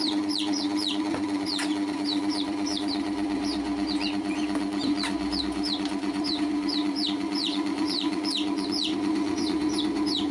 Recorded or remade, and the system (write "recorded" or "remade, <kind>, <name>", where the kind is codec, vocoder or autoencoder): remade, vocoder, Vocos